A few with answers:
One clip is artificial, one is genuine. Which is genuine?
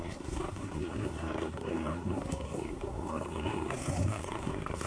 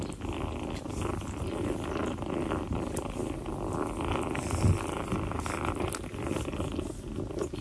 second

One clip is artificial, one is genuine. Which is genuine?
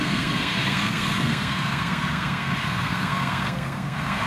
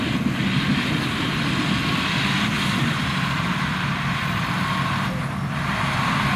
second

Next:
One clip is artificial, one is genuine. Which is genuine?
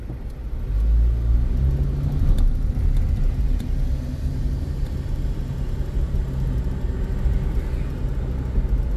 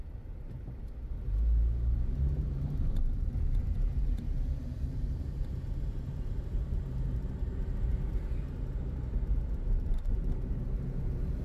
first